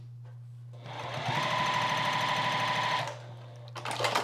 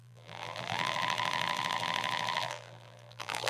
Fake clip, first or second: second